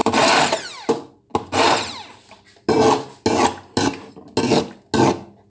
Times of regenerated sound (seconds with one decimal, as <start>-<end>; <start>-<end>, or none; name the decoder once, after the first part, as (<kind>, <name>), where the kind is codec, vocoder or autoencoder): none